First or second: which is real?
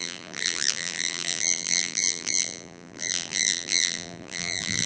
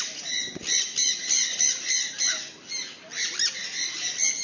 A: second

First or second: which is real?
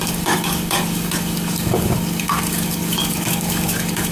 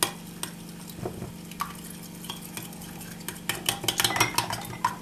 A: second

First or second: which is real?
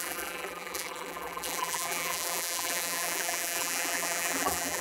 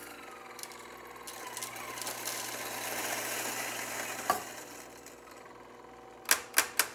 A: second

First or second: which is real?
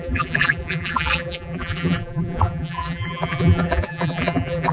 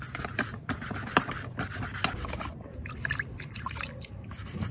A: second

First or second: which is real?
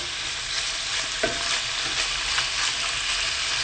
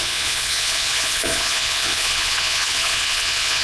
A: first